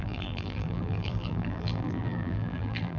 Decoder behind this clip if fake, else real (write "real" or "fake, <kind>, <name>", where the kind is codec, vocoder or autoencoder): fake, vocoder, BigVGAN v2